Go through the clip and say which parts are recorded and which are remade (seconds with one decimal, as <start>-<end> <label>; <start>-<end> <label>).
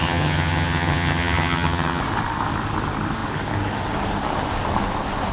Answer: 0.0-2.0 remade; 2.0-5.3 recorded